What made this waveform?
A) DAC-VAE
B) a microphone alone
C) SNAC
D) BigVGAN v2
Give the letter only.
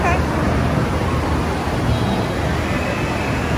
B